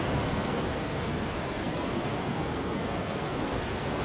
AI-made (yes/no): yes